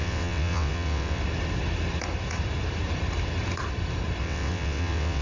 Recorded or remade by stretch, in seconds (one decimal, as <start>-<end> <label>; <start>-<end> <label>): 0.0-1.2 remade; 1.2-4.2 recorded; 4.2-5.2 remade